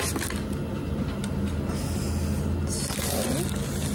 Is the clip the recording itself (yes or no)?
yes